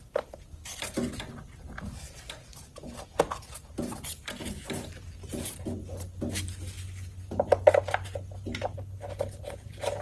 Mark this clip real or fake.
real